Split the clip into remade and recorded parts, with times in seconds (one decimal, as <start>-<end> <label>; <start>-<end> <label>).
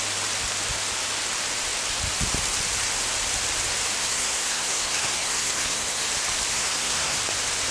0.0-4.0 recorded; 4.0-6.1 remade; 6.1-6.5 recorded; 6.5-7.2 remade; 7.2-7.7 recorded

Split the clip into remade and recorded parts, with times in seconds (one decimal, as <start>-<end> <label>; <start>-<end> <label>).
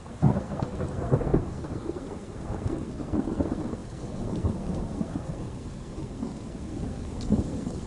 0.0-7.9 remade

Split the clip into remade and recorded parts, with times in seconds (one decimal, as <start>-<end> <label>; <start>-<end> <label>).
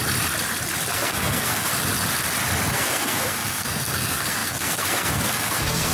0.0-0.9 recorded; 0.9-1.7 remade; 1.7-2.7 recorded; 2.7-5.9 remade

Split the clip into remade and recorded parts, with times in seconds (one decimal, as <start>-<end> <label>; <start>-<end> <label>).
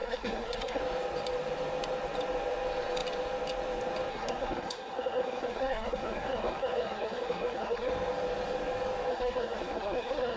0.0-0.8 remade; 0.8-4.1 recorded; 4.1-7.9 remade; 7.9-9.1 recorded; 9.1-10.4 remade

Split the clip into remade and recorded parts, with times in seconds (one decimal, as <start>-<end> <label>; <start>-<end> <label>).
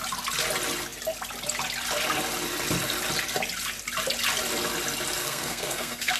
0.0-5.2 recorded; 5.2-6.2 remade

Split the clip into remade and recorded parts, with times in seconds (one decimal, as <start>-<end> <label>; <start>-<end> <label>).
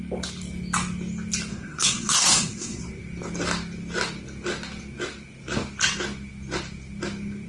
0.0-1.5 recorded; 1.5-2.8 remade; 2.8-7.5 recorded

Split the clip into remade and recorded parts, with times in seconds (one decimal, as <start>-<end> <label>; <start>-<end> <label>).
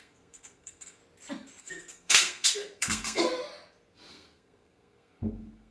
0.0-1.0 remade; 1.0-1.6 recorded; 1.6-3.3 remade; 3.3-4.1 recorded; 4.1-5.7 remade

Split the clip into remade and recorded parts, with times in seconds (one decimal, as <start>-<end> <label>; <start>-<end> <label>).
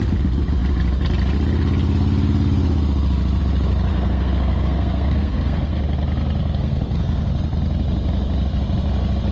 0.0-3.9 recorded; 3.9-5.8 remade; 5.8-6.4 recorded; 6.4-7.3 remade; 7.3-9.3 recorded